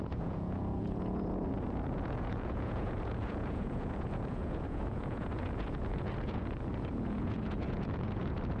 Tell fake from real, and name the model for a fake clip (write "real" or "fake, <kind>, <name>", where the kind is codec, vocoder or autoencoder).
fake, vocoder, Vocos